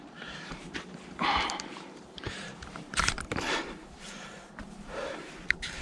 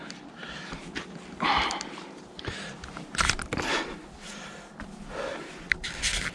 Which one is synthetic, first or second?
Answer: first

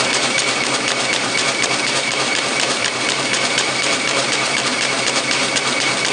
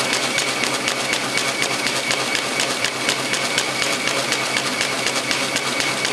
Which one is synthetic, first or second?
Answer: first